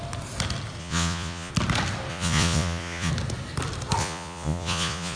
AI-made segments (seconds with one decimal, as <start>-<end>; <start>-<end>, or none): 0.8-1.5; 2.1-3.1; 4.0-5.2